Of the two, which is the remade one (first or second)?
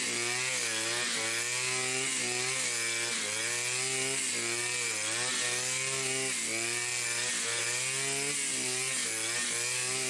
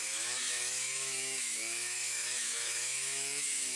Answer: second